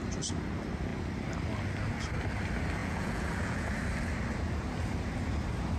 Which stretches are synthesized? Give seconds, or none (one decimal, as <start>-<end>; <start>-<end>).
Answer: 2.8-3.7